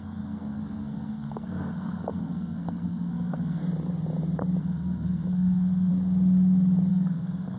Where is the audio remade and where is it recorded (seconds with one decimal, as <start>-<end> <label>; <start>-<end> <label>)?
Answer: 0.0-3.6 remade; 3.6-4.6 recorded; 4.6-5.9 remade; 5.9-6.9 recorded; 6.9-7.6 remade